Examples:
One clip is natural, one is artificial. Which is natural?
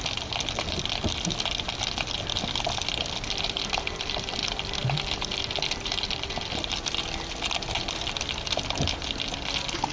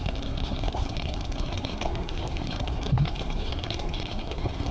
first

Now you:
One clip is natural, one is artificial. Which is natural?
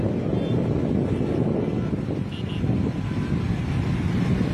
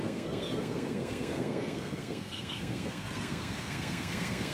first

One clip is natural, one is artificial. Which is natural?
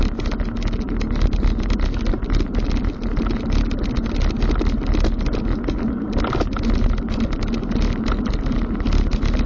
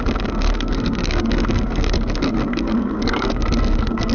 first